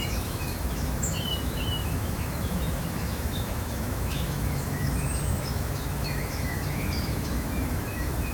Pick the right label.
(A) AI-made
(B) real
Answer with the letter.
A